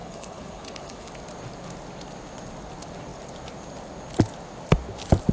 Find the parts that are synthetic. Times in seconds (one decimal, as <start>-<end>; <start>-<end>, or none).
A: 0.0-1.1